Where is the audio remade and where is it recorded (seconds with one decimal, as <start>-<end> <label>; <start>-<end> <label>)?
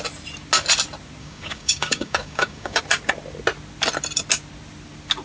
0.0-1.2 recorded; 1.2-2.8 remade; 2.8-5.2 recorded